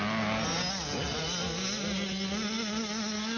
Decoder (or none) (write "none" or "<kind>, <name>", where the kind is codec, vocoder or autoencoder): none